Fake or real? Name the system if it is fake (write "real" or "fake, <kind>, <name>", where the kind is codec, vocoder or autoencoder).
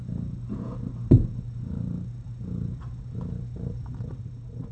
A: fake, vocoder, BigVGAN v2